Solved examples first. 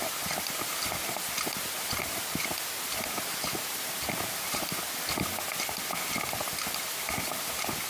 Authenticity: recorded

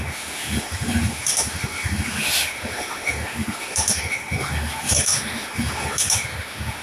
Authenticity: remade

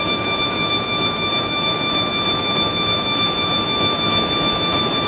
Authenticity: remade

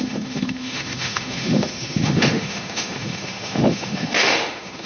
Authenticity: remade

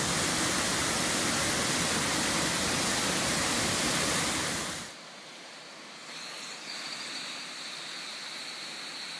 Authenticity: recorded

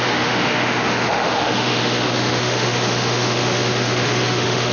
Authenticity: remade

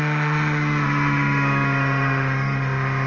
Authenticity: remade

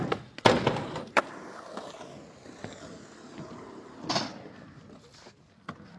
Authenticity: recorded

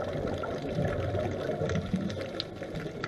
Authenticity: recorded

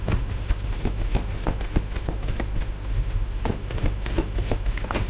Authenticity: remade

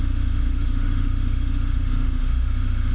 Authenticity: remade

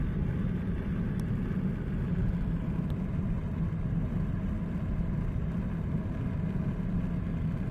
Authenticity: recorded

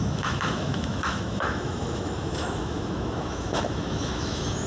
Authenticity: remade